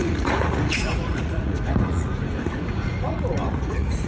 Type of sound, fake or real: fake